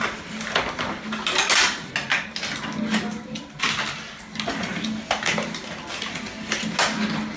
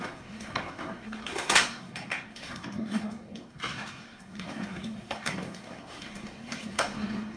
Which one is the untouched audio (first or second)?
first